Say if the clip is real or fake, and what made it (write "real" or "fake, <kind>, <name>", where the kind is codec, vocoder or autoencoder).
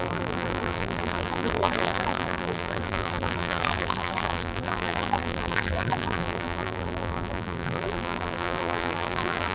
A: fake, vocoder, BigVGAN v2